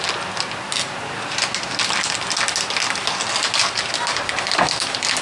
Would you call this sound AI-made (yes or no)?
no